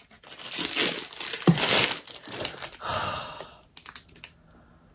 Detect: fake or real real